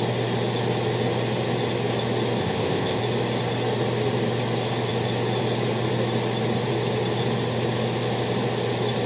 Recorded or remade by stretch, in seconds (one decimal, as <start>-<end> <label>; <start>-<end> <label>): 0.0-2.4 recorded; 2.4-3.0 remade; 3.0-9.1 recorded